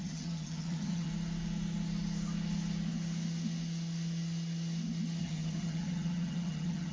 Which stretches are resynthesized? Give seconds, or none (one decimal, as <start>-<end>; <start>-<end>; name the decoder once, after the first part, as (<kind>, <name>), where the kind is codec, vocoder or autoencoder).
0.0-1.1 (vocoder, HiFi-GAN); 5.2-6.9